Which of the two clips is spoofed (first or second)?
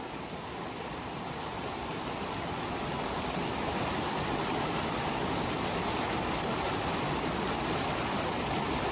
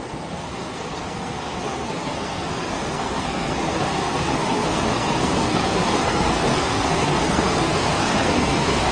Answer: second